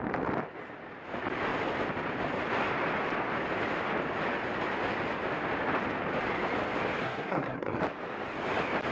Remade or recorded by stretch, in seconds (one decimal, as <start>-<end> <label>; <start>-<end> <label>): 0.0-7.0 recorded; 7.0-7.8 remade; 7.8-8.9 recorded